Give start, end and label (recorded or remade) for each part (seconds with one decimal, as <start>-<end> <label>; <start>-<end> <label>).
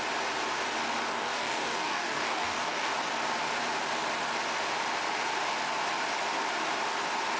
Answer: 0.0-1.1 recorded; 1.1-2.9 remade; 2.9-7.4 recorded